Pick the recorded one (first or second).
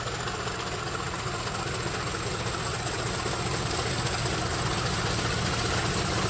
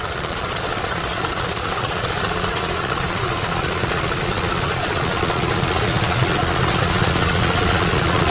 first